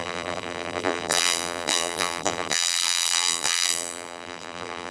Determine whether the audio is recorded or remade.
remade